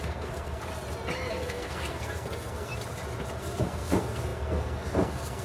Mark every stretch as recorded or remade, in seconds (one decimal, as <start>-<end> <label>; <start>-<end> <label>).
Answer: 0.0-0.7 remade; 0.7-1.3 recorded; 1.3-2.7 remade; 2.7-3.4 recorded; 3.4-5.4 remade